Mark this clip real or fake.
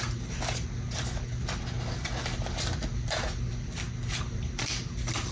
real